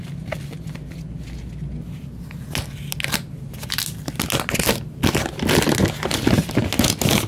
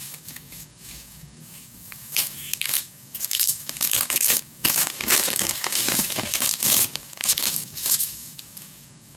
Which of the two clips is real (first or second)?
first